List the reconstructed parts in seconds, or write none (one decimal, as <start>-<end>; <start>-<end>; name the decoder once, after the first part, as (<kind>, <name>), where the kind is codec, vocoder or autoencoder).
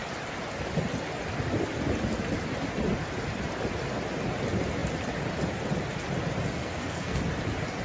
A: 6.6-7.2 (codec, SNAC)